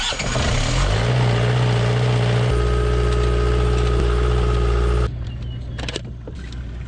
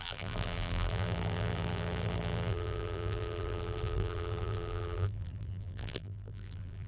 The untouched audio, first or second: first